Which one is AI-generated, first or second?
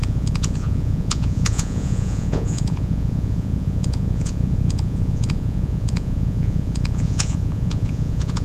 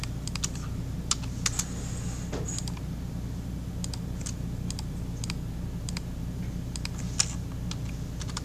first